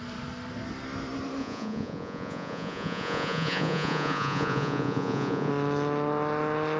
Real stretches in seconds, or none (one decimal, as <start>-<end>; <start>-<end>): 0.0-1.4; 5.5-6.8

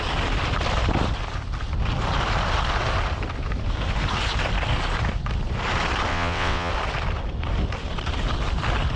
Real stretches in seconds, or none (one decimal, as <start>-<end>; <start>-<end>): 0.0-6.1; 6.7-9.0

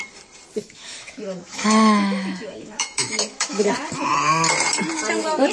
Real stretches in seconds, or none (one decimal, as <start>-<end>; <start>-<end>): 0.0-0.6; 3.6-5.5

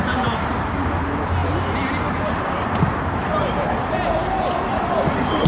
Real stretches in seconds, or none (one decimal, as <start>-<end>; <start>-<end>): 1.4-2.1; 4.2-4.7

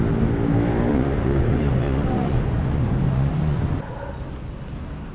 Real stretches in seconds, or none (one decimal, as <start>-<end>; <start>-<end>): 0.0-0.9; 3.9-5.1

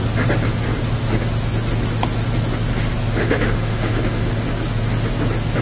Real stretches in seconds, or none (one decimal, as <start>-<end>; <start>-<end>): 0.0-3.2; 4.3-5.6

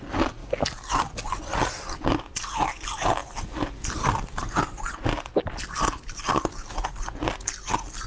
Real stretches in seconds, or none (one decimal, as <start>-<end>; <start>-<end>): 0.0-8.1

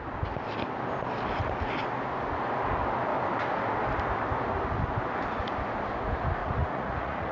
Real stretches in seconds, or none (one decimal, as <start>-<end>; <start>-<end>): 0.0-6.4